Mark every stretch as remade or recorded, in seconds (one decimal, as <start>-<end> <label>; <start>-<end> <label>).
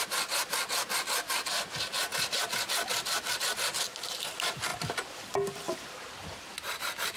0.0-7.2 recorded